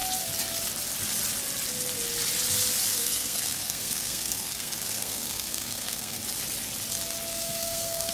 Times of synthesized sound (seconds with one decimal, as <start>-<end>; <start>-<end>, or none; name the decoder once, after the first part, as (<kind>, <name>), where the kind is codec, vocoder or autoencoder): 2.9-6.2 (codec, SNAC); 7.3-8.1